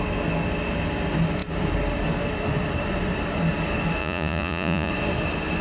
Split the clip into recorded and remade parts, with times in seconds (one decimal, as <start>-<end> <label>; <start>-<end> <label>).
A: 0.0-4.0 recorded; 4.0-4.9 remade; 4.9-5.6 recorded